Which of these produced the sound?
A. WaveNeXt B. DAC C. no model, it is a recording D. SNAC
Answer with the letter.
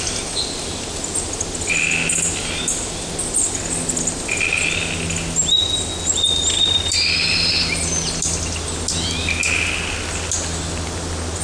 C